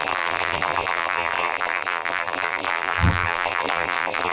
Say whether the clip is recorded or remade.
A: remade